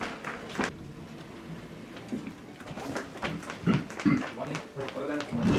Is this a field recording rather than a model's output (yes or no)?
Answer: yes